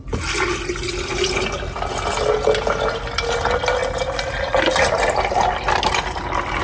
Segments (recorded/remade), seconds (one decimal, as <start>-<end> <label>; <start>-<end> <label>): 0.0-6.6 recorded